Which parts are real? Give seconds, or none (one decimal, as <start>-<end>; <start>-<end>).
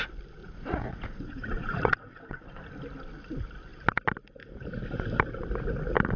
0.0-0.4; 2.2-6.2